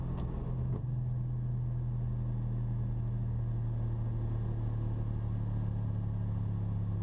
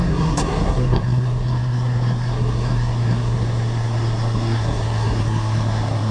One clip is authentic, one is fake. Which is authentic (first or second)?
first